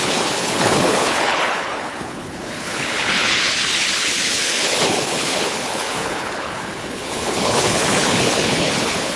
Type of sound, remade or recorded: remade